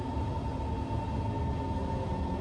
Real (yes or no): yes